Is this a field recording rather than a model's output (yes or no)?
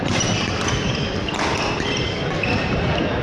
no